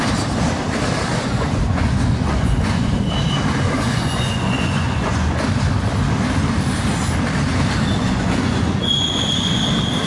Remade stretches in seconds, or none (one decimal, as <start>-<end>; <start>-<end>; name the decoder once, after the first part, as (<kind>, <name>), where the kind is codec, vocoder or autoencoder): 1.1-3.1 (vocoder, Vocos); 3.8-5.4; 8.0-9.6